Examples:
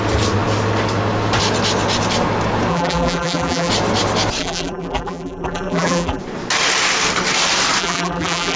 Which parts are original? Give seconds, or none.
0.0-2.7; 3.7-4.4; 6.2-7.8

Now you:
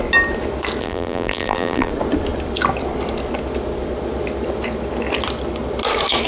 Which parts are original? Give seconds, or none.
0.0-0.8; 1.9-6.3

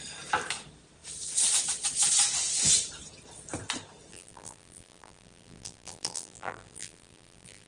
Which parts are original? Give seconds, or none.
0.0-4.1

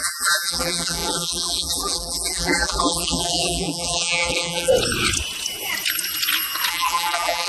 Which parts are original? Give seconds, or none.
4.7-6.7